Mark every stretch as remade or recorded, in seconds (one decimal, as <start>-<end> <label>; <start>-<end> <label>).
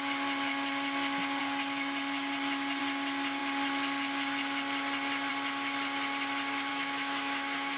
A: 0.0-6.7 recorded; 6.7-7.8 remade